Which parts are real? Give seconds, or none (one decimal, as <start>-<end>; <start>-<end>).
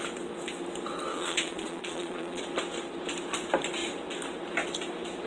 0.0-1.1; 2.4-5.3